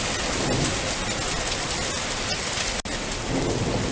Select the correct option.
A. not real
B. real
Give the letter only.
B